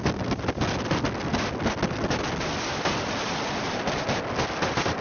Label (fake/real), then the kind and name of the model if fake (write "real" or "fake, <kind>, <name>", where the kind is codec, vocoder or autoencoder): real